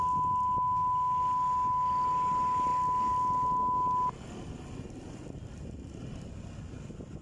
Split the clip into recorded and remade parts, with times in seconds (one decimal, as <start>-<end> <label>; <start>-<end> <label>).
0.0-7.2 recorded